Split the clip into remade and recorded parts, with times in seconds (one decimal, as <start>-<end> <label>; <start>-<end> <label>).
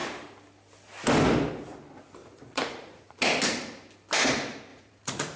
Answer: 0.0-2.2 recorded; 2.2-3.3 remade; 3.3-4.7 recorded; 4.7-5.4 remade